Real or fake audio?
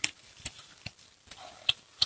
real